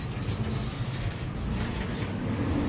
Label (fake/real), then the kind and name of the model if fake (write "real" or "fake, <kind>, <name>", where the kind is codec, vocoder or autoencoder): real